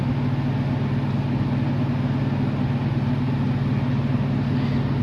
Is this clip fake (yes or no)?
no